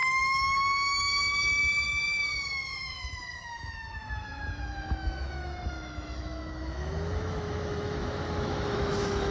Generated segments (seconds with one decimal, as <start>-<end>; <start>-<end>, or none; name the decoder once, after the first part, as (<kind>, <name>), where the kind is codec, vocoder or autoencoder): 0.0-9.3 (autoencoder, DAC-VAE)